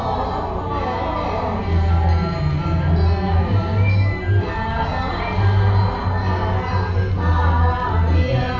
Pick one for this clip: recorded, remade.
recorded